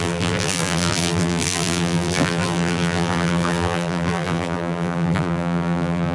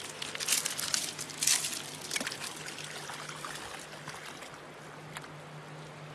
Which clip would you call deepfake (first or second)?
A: first